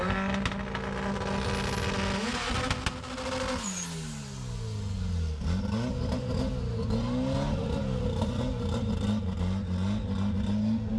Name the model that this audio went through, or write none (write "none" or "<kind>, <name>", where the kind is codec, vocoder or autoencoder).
none